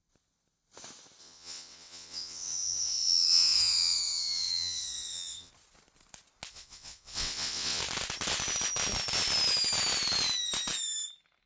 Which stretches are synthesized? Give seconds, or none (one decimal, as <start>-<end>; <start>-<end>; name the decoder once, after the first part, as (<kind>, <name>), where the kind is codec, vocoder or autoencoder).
1.2-5.5 (vocoder, WaveNeXt); 6.5-7.8